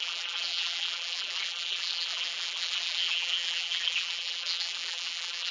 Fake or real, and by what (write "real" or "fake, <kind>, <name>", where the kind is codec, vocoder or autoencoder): fake, vocoder, BigVGAN v2